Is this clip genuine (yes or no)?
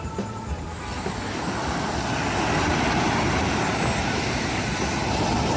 yes